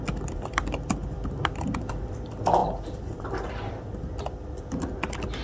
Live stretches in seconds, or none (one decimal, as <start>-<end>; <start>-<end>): 0.0-1.0; 2.1-2.6; 4.6-5.4